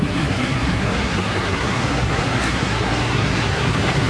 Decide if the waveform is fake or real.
fake